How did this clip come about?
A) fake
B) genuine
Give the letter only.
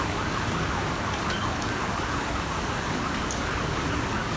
A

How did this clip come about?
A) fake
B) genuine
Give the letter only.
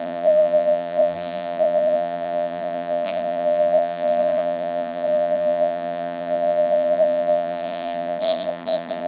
A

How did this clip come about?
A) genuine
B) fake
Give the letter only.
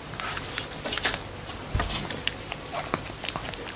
B